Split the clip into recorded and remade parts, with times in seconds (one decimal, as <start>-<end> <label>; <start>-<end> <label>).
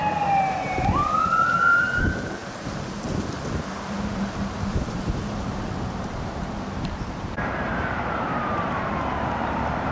0.0-9.9 remade